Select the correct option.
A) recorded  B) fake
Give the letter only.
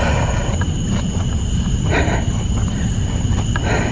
A